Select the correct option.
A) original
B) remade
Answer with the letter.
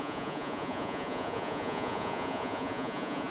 B